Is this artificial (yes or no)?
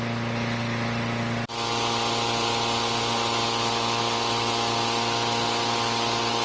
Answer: no